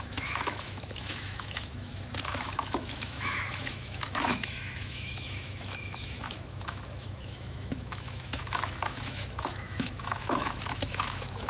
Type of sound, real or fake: fake